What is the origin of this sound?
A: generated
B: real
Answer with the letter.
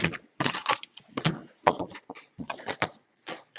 A